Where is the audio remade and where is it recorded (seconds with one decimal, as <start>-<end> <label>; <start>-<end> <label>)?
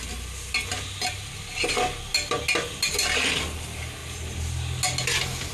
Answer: 0.0-5.5 recorded